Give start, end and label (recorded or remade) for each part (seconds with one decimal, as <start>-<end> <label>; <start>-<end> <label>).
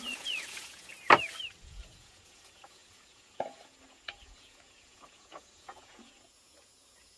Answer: 0.0-0.9 remade; 0.9-1.6 recorded; 1.6-7.2 remade